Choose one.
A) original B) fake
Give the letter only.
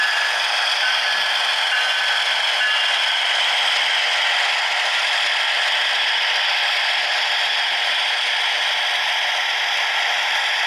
A